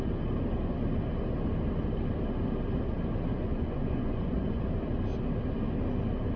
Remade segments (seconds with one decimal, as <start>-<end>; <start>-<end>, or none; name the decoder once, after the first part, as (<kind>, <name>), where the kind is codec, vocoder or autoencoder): 3.3-4.6 (vocoder, Vocos)